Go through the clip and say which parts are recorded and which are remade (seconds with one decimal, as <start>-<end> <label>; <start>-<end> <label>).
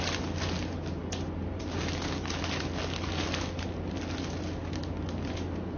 0.0-5.8 recorded